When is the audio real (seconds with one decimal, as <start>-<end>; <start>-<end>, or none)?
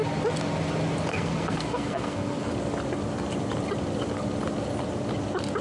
0.0-1.1; 2.5-5.6